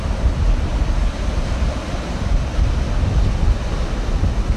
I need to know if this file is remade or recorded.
recorded